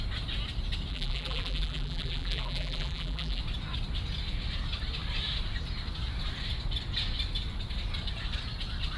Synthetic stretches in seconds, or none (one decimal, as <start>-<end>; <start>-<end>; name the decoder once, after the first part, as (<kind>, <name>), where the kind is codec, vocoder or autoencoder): 0.9-3.4 (vocoder, BigVGAN v2)